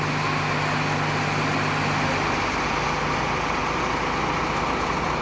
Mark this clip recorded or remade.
recorded